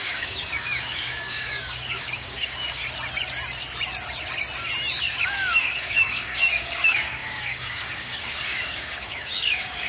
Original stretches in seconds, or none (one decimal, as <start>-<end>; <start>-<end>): 2.8-5.2